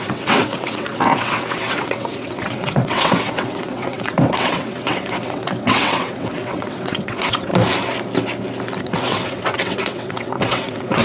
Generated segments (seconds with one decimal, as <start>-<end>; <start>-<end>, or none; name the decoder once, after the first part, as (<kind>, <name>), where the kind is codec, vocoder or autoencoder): 0.0-7.5 (vocoder, WaveNeXt); 8.8-11.0